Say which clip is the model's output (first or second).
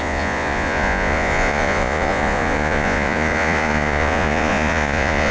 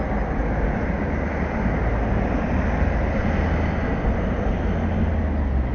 first